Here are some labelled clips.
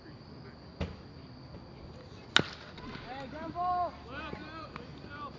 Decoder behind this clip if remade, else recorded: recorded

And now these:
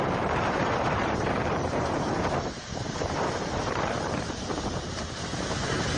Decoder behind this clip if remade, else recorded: remade, vocoder, BigVGAN v2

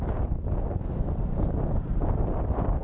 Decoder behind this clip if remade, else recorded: recorded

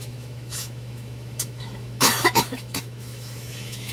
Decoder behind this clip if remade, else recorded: remade, autoencoder, DAC-VAE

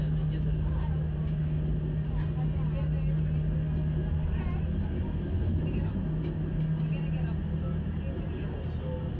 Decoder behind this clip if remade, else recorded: recorded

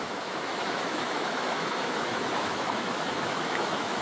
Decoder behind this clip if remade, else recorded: remade, autoencoder, DAC-VAE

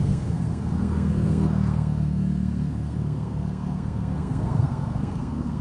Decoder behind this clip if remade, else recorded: remade, codec, SNAC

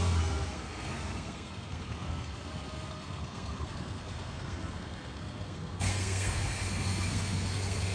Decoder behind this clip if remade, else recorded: remade, codec, SNAC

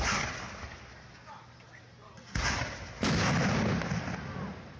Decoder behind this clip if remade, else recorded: recorded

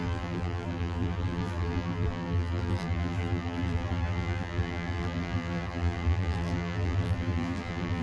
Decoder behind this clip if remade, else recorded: remade, vocoder, BigVGAN v2